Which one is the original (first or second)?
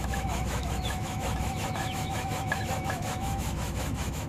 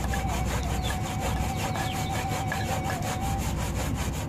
second